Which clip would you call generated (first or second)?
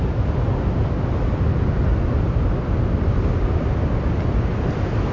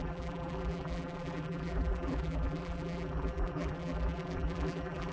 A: second